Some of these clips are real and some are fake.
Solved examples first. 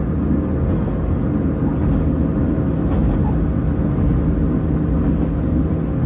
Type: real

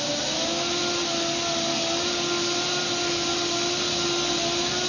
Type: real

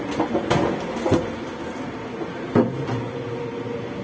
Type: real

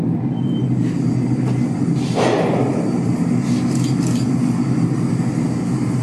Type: real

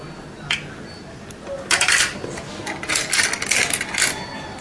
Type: real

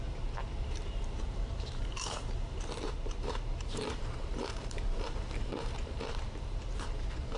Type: fake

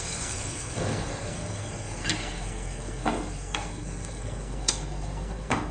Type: fake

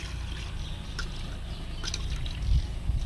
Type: real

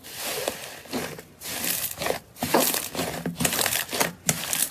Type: fake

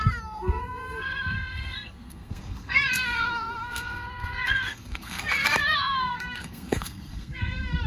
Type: fake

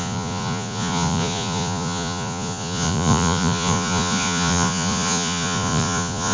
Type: fake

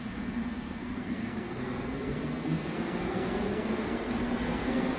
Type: fake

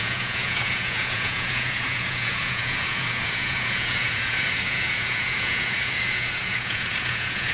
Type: fake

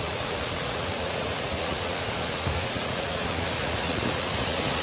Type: fake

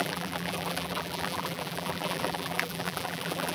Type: fake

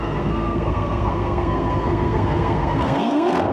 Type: fake